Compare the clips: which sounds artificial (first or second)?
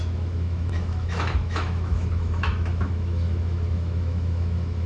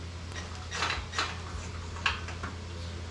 first